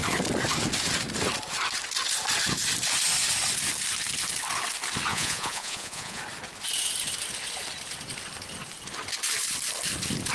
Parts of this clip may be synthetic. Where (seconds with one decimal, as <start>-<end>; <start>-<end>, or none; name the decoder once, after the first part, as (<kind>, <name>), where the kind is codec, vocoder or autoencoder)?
5.1-6.2 (vocoder, Vocos)